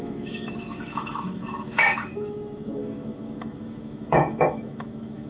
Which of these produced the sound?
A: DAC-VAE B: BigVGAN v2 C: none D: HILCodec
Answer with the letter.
A